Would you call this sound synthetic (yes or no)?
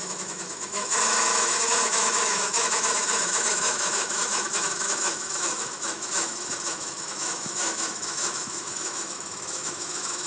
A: yes